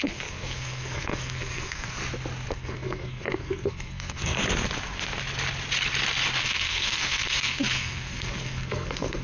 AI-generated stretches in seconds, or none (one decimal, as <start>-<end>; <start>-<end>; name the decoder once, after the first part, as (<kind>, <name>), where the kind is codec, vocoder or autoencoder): 0.0-2.0 (codec, SNAC); 2.5-4.4; 6.4-9.2